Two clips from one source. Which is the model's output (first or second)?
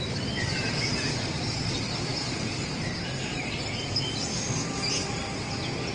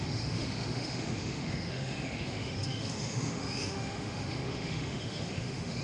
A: second